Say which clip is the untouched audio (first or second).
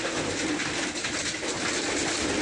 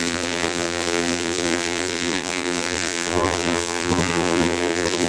first